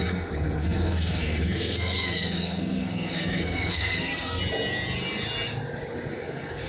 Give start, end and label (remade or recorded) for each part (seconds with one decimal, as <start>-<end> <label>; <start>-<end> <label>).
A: 0.0-4.4 remade; 4.4-6.1 recorded; 6.1-6.7 remade